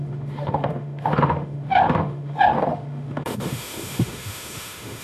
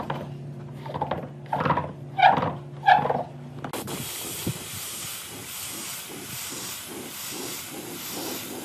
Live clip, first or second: second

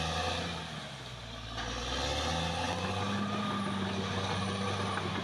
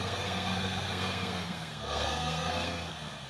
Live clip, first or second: first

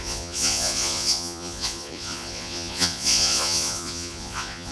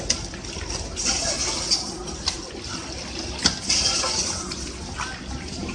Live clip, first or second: second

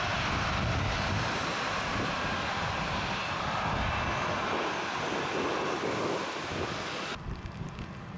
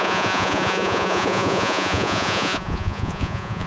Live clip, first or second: first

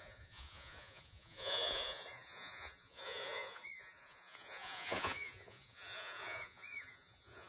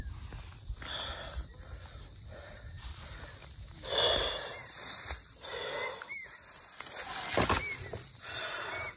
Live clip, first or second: second